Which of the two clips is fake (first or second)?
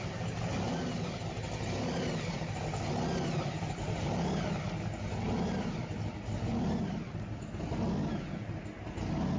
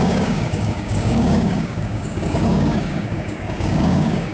second